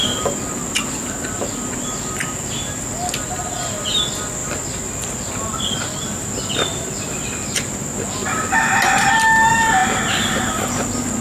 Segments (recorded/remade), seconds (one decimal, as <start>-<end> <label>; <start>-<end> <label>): 0.0-4.0 remade; 4.0-4.4 recorded; 4.4-7.3 remade; 7.3-11.2 recorded